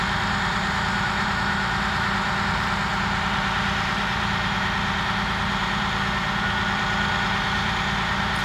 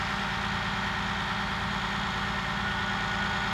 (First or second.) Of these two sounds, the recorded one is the second